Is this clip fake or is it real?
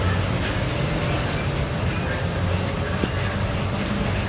real